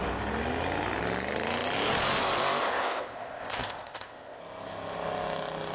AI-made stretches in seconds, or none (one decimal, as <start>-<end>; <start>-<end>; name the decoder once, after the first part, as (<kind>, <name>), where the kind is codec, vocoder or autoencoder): 2.6-4.4 (codec, ZipCodec)